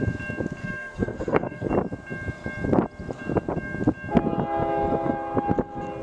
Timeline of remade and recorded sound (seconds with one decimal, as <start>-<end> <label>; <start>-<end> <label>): 0.0-0.6 recorded; 0.6-1.7 remade; 1.7-6.0 recorded

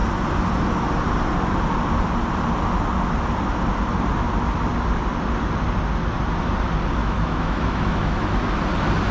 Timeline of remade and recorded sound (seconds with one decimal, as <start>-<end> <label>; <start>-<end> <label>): 0.0-7.0 recorded; 7.0-8.5 remade; 8.5-9.1 recorded

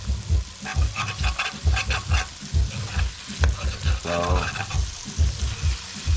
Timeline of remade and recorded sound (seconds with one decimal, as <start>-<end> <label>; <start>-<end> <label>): 0.0-6.2 recorded

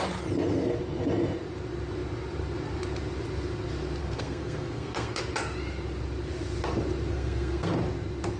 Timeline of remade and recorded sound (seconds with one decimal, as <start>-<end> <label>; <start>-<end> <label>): 0.0-4.0 recorded; 4.0-5.2 remade; 5.2-7.1 recorded; 7.1-7.7 remade; 7.7-8.4 recorded

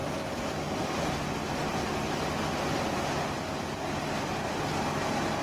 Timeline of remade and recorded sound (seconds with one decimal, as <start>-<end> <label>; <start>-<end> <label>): 0.0-5.4 recorded

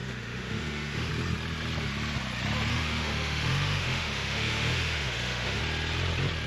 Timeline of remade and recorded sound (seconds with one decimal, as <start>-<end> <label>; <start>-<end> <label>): 0.0-1.1 remade; 1.1-2.7 recorded; 2.7-5.6 remade; 5.6-6.5 recorded